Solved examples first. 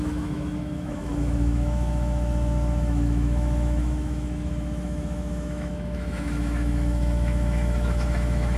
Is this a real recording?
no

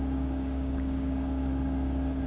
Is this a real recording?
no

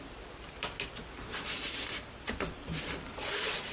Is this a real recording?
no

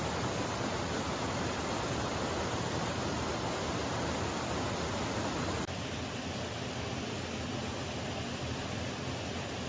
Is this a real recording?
yes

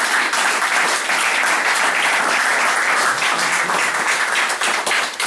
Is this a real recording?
yes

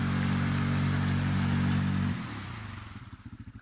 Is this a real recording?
yes